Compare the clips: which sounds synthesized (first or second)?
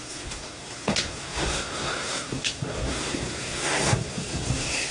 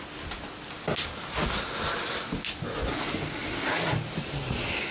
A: first